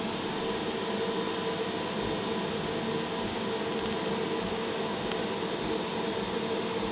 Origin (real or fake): real